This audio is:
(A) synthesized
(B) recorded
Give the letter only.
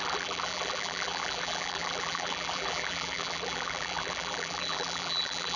A